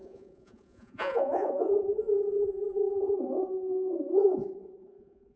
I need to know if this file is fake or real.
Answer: fake